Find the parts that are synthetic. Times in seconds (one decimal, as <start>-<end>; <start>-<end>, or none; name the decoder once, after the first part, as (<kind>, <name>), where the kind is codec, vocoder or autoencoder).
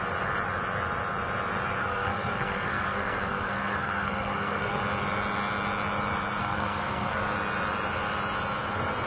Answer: 1.8-4.8 (codec, SNAC); 6.4-7.2